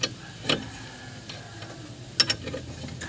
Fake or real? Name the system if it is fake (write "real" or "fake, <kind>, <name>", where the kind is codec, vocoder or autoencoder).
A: real